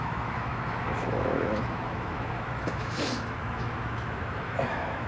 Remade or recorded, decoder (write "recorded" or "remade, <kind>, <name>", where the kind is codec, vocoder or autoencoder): remade, autoencoder, DAC-VAE